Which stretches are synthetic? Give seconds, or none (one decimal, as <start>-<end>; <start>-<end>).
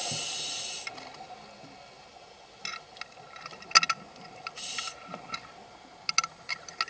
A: none